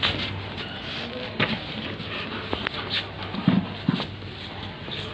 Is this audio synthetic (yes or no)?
no